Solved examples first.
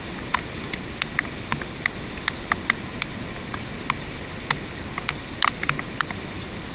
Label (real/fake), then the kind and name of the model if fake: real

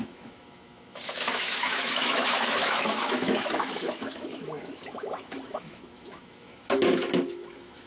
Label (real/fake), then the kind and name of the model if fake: fake, autoencoder, DAC-VAE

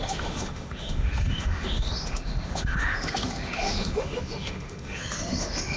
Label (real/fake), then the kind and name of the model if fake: fake, autoencoder, DAC-VAE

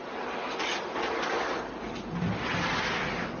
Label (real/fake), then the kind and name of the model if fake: real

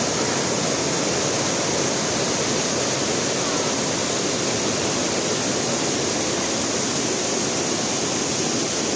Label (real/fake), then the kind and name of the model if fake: real